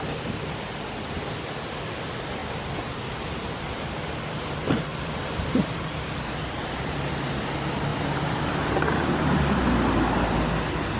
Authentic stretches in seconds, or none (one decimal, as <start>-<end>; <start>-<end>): 0.0-11.0